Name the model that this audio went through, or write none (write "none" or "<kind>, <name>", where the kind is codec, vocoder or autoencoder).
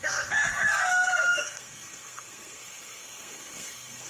codec, SNAC